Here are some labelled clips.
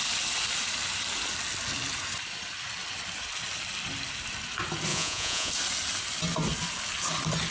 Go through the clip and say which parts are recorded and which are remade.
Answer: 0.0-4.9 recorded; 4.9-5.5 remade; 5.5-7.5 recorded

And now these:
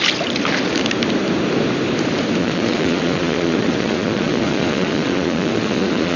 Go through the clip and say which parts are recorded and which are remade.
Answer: 0.0-2.4 recorded; 2.4-6.2 remade

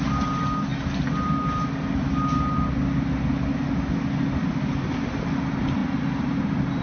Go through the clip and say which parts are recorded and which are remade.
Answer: 0.0-6.8 recorded

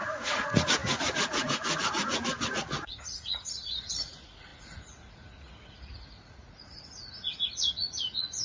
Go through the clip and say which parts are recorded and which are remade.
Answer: 0.0-8.4 remade